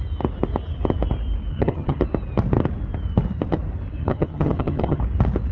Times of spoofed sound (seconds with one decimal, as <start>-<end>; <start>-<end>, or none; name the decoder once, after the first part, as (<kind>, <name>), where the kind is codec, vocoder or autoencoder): 1.5-2.0 (vocoder, HiFi-GAN); 4.0-5.0